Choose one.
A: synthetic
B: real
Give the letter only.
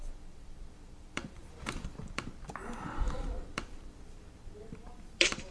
A